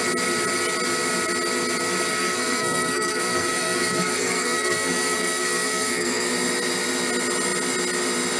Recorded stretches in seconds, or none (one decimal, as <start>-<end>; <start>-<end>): 0.0-2.1; 6.3-8.4